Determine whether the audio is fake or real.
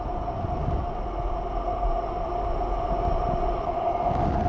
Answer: real